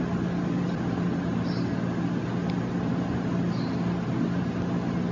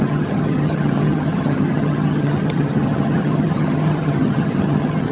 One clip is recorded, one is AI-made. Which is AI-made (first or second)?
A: second